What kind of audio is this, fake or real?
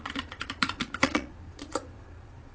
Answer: fake